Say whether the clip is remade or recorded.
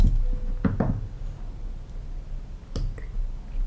recorded